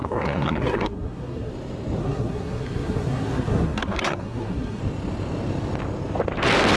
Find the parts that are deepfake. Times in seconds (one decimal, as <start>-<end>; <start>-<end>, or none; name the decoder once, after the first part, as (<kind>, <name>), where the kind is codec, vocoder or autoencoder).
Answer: 0.0-1.5 (codec, SNAC); 2.0-4.8